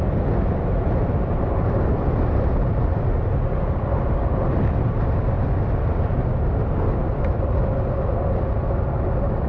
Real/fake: real